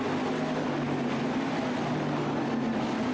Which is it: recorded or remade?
recorded